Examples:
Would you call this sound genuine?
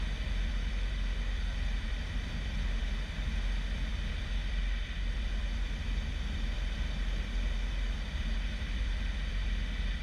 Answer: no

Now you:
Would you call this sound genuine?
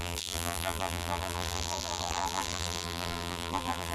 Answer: no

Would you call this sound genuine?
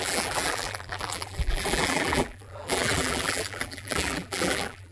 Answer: no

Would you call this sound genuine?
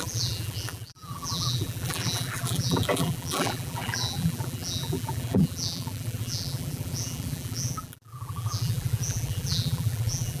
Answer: no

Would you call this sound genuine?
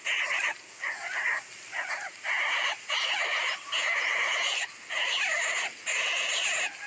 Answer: yes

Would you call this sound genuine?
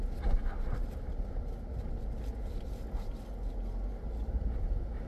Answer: yes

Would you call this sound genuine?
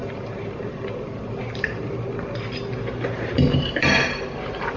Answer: no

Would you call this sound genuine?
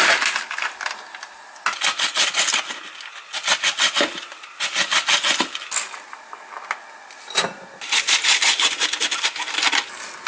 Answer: yes